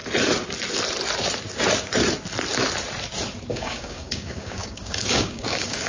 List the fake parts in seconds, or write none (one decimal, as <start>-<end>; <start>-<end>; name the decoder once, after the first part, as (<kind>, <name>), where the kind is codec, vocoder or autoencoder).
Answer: 3.5-5.9 (codec, DAC)